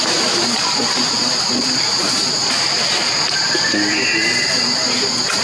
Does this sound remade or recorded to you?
recorded